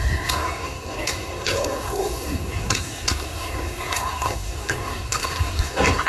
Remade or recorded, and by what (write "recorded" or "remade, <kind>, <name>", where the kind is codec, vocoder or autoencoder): remade, codec, SNAC